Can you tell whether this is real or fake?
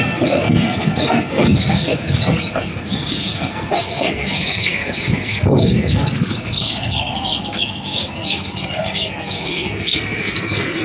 fake